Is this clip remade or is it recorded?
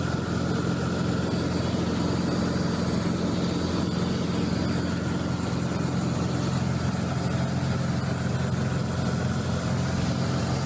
recorded